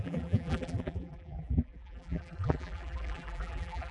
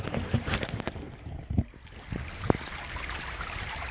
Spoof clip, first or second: first